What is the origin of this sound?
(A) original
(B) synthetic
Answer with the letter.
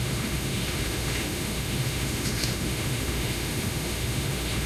B